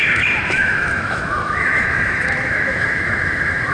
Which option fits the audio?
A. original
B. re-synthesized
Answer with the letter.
B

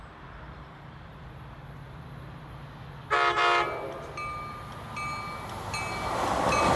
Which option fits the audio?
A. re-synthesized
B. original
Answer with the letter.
B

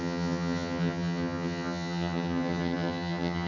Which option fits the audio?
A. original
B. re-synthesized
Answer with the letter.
B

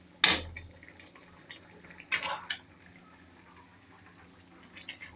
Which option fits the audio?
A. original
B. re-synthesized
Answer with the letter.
A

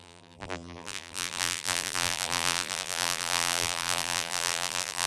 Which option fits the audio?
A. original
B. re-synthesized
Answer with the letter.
B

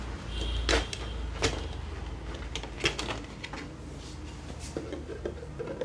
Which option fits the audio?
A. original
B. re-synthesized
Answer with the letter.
A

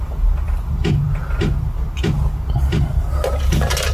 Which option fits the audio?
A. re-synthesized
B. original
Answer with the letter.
B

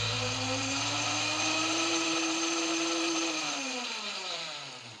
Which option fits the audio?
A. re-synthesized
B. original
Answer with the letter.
A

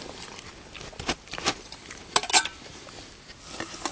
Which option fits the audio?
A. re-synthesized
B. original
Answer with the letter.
B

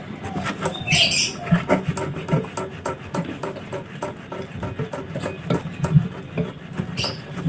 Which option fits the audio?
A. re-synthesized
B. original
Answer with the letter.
B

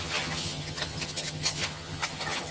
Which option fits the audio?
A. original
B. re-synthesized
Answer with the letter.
B